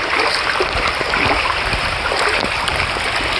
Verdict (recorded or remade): recorded